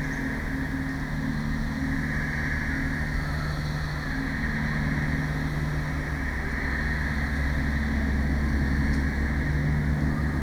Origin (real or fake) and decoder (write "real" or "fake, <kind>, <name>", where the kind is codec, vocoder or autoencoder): real